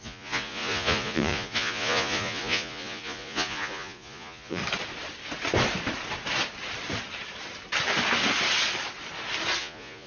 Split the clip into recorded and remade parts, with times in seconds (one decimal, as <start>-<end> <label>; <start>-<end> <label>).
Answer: 0.0-4.6 remade; 4.6-9.6 recorded; 9.6-10.1 remade